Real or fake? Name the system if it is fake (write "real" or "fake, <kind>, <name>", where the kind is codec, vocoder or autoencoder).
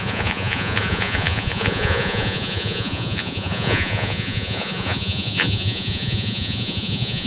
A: fake, vocoder, Vocos